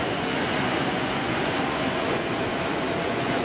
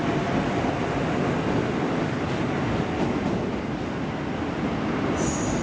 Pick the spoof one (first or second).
first